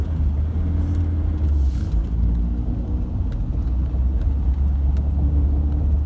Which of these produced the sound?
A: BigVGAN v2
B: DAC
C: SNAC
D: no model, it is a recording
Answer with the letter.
D